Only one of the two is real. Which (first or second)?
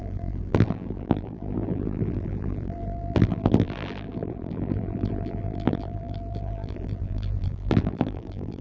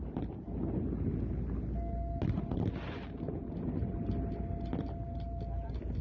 second